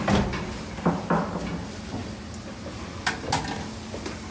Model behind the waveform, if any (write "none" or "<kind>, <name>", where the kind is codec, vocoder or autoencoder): none